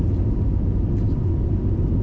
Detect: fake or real real